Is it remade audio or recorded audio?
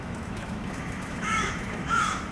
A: remade